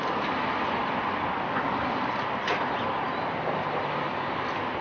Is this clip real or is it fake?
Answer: real